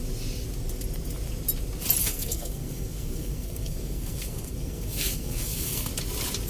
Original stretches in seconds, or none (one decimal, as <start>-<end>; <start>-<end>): 0.0-2.0; 5.9-6.5